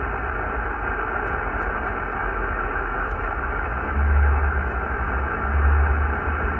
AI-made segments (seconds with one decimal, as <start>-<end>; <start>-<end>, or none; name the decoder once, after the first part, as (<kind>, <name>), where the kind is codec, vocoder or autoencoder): 2.2-5.1 (autoencoder, DAC-VAE)